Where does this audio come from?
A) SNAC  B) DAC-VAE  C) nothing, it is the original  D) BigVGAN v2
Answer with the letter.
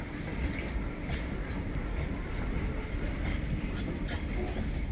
C